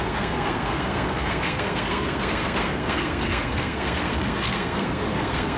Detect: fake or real fake